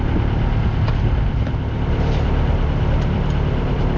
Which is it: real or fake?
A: real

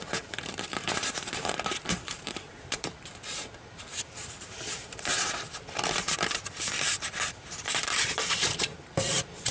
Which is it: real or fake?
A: fake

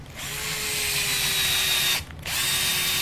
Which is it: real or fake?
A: real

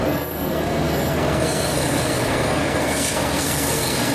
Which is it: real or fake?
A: fake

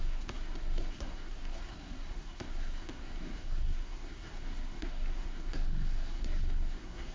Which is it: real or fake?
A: fake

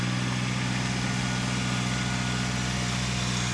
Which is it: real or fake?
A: real